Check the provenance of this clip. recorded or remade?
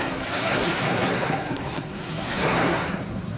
remade